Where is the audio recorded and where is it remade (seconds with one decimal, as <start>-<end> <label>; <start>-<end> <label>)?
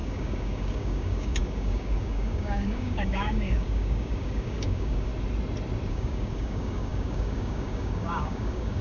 0.0-5.1 remade; 5.1-5.9 recorded; 5.9-8.8 remade